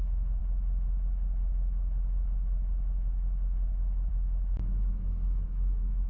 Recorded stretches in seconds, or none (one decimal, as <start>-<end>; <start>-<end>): 0.4-4.1

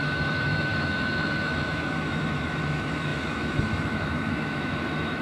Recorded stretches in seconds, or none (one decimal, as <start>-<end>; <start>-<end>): none

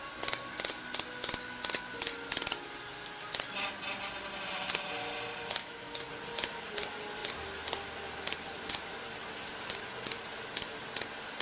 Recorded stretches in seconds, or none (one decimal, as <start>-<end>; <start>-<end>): 0.0-5.6; 6.1-11.4

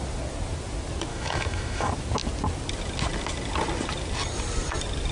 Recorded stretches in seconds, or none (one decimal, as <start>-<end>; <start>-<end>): 0.0-1.1; 1.9-5.1

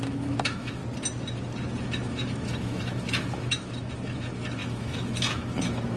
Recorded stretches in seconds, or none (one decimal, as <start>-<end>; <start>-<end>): 0.8-1.8

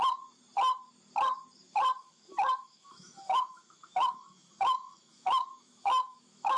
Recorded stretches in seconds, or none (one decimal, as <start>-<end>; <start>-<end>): 0.0-2.0

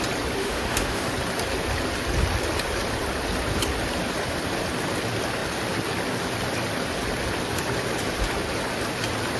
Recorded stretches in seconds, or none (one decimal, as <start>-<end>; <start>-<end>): 0.0-0.4; 1.1-9.4